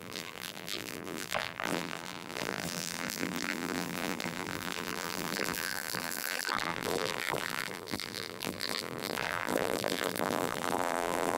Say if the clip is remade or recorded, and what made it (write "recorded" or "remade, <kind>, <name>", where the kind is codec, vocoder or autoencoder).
remade, vocoder, BigVGAN v2